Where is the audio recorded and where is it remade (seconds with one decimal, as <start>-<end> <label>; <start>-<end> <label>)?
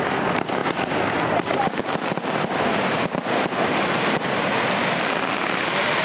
0.0-6.0 recorded